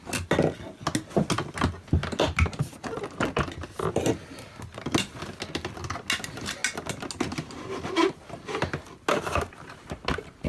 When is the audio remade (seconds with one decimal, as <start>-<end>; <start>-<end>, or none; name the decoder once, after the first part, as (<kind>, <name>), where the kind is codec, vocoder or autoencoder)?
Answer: none